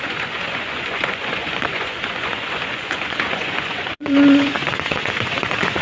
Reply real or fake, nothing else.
fake